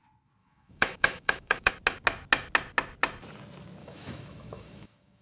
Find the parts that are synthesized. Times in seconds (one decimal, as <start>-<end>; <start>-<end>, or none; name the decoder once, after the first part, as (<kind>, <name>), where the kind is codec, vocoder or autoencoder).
0.4-1.7 (autoencoder, DAC-VAE); 3.8-5.2